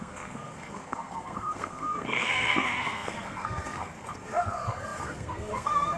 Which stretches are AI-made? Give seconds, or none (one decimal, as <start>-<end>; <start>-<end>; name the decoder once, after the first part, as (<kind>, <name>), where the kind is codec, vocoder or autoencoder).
0.0-6.0 (codec, SNAC)